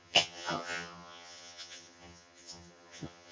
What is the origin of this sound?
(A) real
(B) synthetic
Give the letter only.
B